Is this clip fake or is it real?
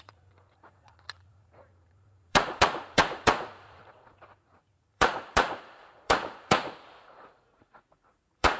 fake